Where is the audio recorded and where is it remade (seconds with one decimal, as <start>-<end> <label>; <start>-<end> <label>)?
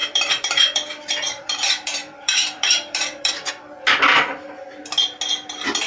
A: 0.0-3.5 remade; 3.5-5.9 recorded